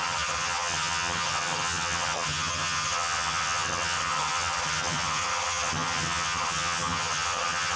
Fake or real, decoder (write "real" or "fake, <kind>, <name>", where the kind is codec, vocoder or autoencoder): fake, vocoder, HiFi-GAN